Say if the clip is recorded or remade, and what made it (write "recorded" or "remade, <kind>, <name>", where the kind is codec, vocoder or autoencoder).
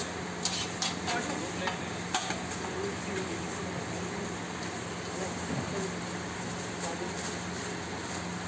recorded